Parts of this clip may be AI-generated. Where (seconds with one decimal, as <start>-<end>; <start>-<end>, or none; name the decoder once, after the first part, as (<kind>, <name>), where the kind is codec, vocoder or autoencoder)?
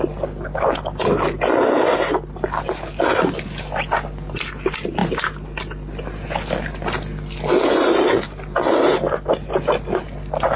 none